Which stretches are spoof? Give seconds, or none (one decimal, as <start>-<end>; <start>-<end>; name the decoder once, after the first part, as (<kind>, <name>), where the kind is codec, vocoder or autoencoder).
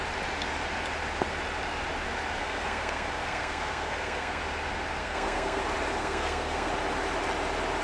2.4-4.4 (codec, SNAC); 5.0-5.6; 6.0-6.7